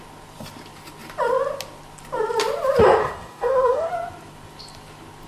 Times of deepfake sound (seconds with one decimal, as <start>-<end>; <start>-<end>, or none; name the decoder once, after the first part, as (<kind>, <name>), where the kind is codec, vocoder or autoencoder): 3.0-3.9 (codec, DAC)